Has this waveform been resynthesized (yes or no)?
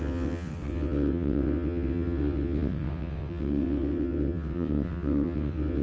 yes